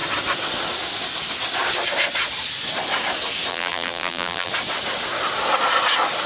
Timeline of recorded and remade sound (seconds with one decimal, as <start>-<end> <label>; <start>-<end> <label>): 0.0-3.5 recorded; 3.5-4.5 remade; 4.5-6.3 recorded